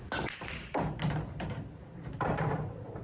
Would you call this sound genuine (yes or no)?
no